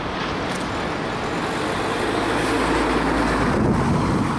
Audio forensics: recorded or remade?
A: recorded